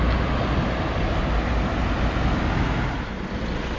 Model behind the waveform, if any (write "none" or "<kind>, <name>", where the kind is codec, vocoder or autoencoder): none